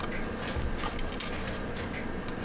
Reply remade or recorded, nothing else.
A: recorded